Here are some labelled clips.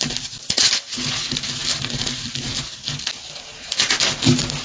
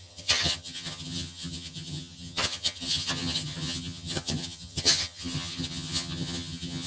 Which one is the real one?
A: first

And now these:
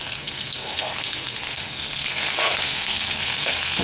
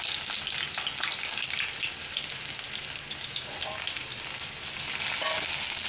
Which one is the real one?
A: second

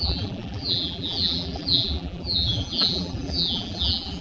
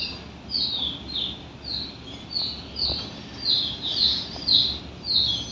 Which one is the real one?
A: second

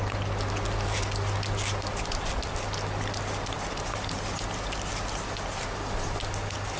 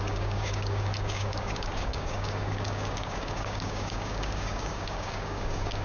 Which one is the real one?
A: first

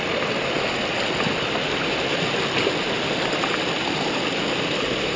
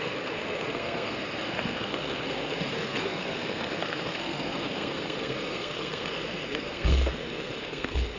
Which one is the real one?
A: first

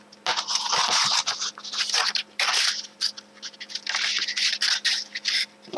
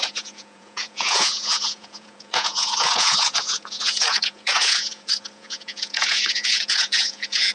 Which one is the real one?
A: first